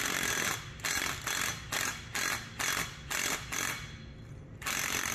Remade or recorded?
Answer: recorded